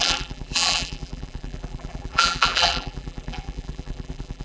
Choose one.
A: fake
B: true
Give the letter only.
A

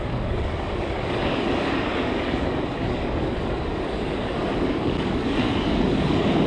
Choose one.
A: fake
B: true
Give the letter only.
A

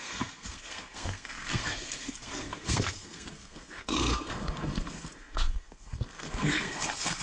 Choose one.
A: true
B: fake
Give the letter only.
B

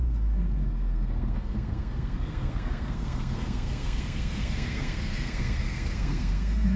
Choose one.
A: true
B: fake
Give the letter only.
B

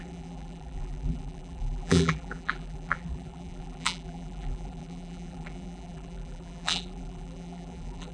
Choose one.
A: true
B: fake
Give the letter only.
B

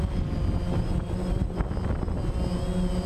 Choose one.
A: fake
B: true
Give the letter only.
B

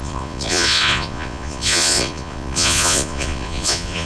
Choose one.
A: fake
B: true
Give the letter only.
A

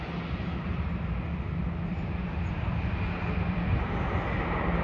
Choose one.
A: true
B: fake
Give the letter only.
A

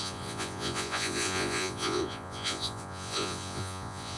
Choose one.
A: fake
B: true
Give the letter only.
A